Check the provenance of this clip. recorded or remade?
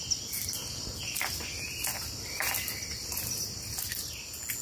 recorded